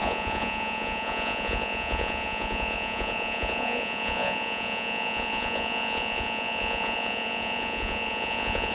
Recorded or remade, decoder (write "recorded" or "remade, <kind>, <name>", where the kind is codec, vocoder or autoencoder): remade, vocoder, Vocos